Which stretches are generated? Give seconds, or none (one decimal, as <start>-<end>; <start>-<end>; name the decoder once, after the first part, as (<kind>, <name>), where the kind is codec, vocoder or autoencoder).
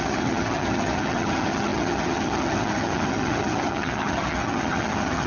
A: 0.0-5.3 (vocoder, HiFi-GAN)